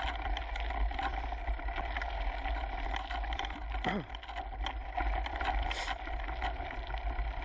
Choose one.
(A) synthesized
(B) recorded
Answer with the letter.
B